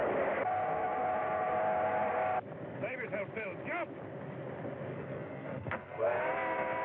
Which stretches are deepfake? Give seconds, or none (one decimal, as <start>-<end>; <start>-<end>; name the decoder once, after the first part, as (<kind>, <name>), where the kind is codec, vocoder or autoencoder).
4.9-6.2 (codec, SNAC)